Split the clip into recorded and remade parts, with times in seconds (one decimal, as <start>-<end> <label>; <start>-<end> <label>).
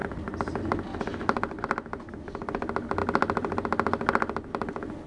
0.0-5.1 recorded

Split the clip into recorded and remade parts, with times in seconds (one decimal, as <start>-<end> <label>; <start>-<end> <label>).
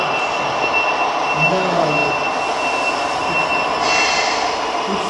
0.0-5.1 recorded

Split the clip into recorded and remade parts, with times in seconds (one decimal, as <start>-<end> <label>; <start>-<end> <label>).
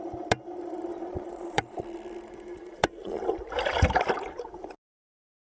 0.0-0.9 recorded; 0.9-1.8 remade; 1.8-2.5 recorded; 2.5-3.2 remade; 3.2-5.6 recorded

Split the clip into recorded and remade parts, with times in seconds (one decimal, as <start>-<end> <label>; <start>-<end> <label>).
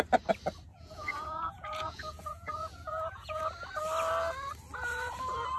0.0-0.7 recorded; 0.7-3.4 remade; 3.4-5.6 recorded